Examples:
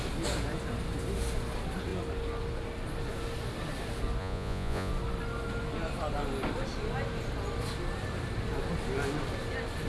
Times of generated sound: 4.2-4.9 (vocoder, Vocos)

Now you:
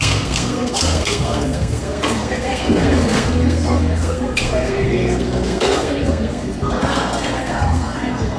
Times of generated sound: 0.0-8.4 (codec, SNAC)

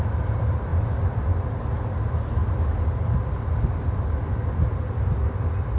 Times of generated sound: none